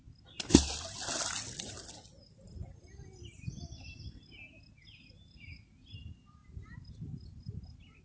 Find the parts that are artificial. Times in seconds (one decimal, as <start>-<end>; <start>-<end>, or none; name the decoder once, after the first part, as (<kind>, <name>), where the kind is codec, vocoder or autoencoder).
6.4-8.0 (vocoder, BigVGAN v2)